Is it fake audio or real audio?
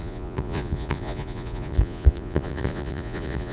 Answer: fake